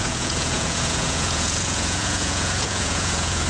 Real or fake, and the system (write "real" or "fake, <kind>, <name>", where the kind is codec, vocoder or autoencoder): fake, vocoder, Vocos